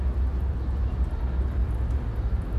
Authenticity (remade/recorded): recorded